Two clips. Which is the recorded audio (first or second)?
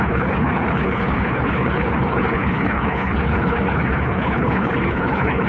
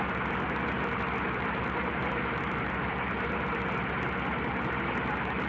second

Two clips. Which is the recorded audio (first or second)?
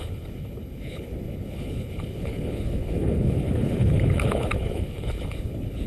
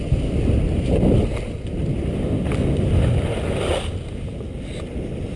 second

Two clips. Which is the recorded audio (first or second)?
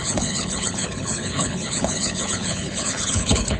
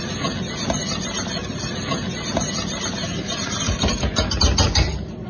second